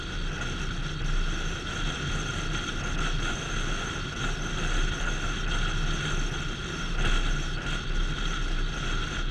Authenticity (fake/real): real